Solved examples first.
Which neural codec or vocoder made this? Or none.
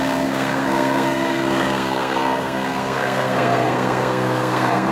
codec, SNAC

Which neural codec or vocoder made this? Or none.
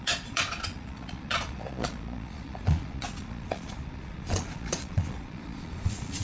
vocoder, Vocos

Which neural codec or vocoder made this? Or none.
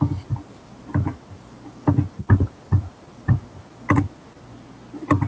none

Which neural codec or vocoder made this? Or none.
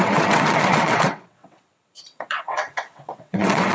vocoder, WaveNeXt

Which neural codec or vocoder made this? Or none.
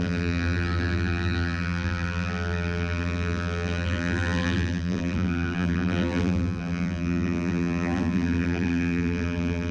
vocoder, BigVGAN v2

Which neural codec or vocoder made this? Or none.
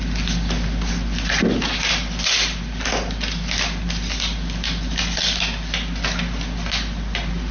none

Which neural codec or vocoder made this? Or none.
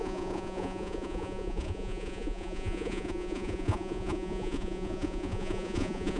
vocoder, Vocos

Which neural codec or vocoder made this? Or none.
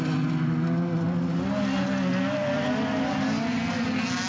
none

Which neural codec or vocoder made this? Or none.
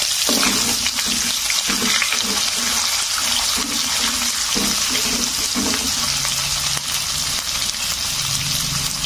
none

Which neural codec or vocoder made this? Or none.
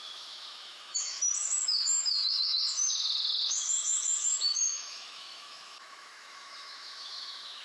autoencoder, DAC-VAE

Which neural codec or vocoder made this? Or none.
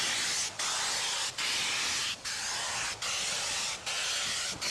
none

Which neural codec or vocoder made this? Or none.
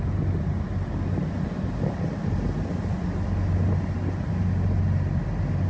none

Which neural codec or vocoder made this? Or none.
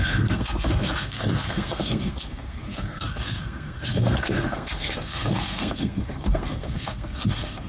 codec, SNAC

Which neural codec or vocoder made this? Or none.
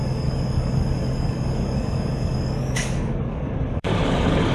codec, DAC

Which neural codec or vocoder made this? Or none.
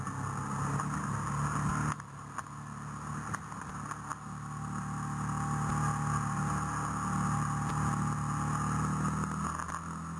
none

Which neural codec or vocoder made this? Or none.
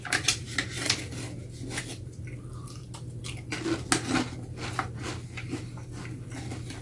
none